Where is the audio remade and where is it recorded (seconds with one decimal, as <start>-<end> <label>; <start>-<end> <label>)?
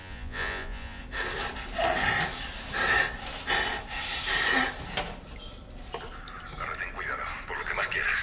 0.0-1.0 remade; 1.0-8.2 recorded